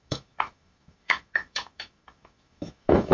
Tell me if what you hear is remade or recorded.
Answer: remade